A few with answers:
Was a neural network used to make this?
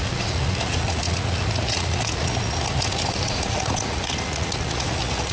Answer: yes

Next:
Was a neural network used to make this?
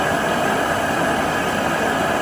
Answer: no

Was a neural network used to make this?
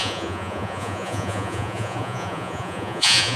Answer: yes